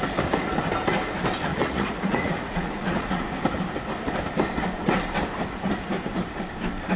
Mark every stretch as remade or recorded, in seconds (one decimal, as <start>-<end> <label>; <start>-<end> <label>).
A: 0.0-1.5 recorded; 1.5-3.3 remade; 3.3-7.0 recorded